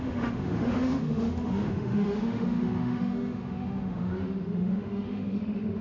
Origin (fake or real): fake